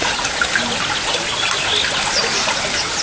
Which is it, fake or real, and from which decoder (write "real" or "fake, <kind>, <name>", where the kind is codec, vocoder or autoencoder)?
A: real